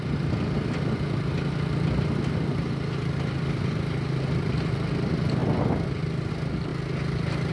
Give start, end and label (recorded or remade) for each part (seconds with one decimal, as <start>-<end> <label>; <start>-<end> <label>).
0.0-7.5 recorded